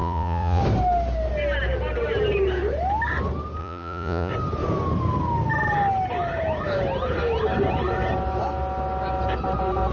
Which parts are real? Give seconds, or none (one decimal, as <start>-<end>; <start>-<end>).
0.6-3.6; 4.3-9.9